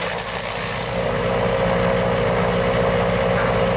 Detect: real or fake real